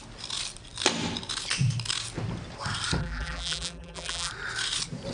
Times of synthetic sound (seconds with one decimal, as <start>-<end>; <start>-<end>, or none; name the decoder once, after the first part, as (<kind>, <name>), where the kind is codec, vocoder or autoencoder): 3.0-4.3 (vocoder, BigVGAN v2)